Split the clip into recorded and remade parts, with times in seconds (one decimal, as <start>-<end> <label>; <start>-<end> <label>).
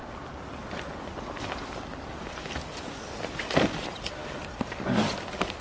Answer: 0.0-5.6 recorded